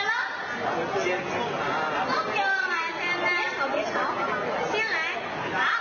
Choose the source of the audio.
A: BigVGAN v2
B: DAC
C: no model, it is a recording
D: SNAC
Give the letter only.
C